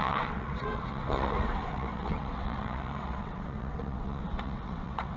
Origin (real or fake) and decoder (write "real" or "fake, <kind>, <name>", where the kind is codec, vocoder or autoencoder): fake, vocoder, WaveNeXt